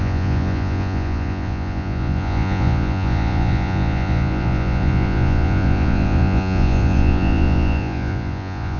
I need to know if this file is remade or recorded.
remade